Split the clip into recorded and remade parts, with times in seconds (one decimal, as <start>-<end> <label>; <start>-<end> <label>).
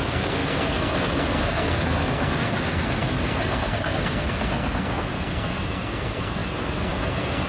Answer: 0.0-7.5 remade